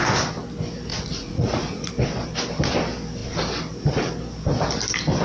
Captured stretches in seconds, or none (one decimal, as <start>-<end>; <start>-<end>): 0.0-0.9; 1.9-5.2